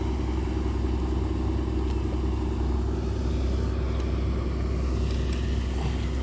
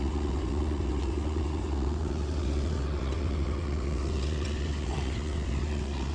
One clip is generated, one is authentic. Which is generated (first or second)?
second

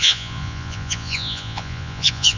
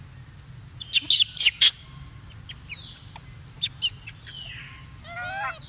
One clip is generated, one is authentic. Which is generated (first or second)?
first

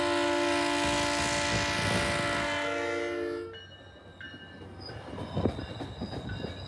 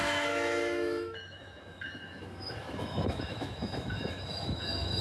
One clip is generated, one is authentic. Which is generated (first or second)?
second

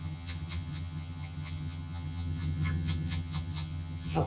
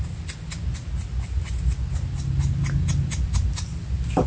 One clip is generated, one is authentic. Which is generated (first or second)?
first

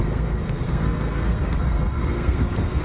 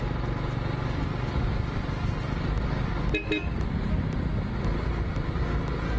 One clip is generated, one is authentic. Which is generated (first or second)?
first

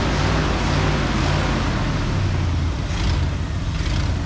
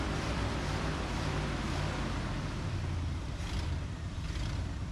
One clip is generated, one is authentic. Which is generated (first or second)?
second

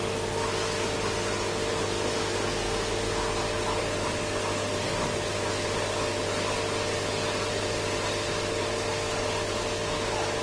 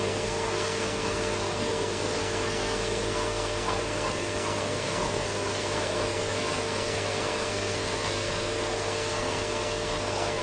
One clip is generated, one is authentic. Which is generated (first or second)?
second